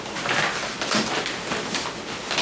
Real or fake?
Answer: real